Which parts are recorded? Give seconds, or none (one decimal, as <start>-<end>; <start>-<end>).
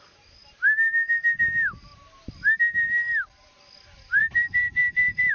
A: 0.0-4.2